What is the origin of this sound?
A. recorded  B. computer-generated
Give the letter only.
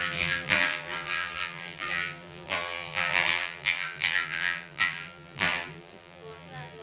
B